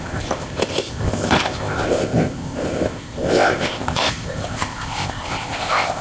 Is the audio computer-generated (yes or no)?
yes